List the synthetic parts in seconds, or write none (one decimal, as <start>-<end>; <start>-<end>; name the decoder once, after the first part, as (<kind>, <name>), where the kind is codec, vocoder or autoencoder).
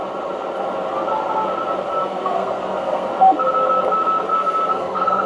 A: 1.9-3.1 (codec, SNAC); 4.3-5.3